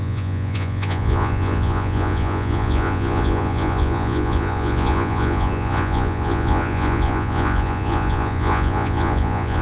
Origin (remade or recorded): remade